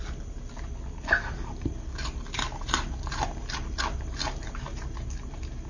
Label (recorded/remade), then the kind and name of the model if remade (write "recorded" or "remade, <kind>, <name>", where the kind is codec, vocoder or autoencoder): recorded